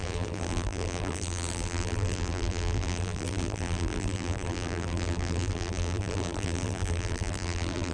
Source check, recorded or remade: remade